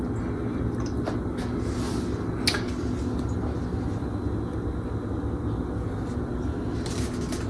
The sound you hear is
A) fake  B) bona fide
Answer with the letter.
B